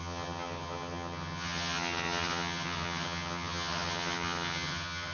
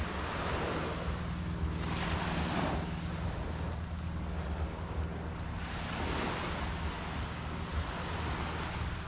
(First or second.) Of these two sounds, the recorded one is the second